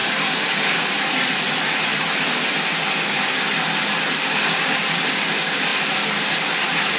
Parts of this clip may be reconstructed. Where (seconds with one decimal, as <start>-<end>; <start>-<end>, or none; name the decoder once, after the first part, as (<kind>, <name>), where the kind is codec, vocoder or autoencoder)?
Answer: 0.0-1.5 (vocoder, BigVGAN v2)